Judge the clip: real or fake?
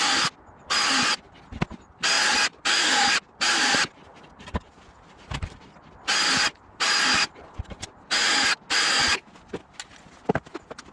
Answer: real